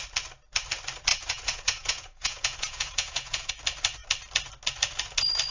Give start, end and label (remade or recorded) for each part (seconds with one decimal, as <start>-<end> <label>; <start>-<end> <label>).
0.0-1.1 recorded; 1.1-3.5 remade; 3.5-5.5 recorded